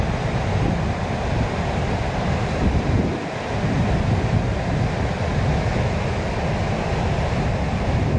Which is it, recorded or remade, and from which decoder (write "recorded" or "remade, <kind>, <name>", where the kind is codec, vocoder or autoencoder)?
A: recorded